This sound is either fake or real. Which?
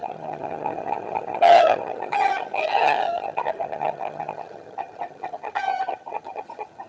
fake